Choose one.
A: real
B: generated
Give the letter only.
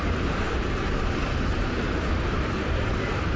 B